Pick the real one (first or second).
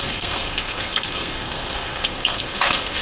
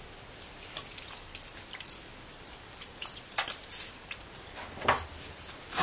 second